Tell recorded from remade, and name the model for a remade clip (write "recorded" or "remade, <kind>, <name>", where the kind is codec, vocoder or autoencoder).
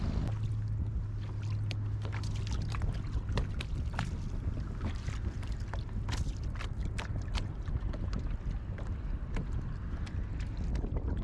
recorded